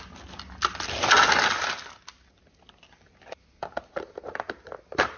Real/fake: real